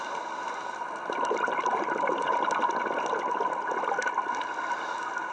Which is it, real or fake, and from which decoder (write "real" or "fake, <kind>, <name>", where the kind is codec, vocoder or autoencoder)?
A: real